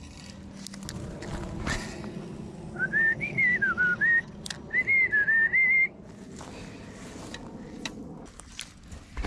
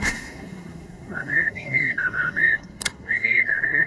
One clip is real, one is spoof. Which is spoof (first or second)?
second